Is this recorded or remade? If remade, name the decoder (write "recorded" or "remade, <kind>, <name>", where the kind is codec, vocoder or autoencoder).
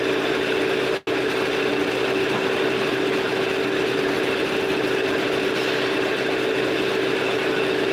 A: recorded